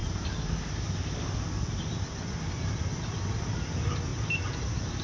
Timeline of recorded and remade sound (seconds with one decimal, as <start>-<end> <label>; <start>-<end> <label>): 0.0-3.0 recorded; 3.0-4.1 remade; 4.1-4.6 recorded; 4.6-5.0 remade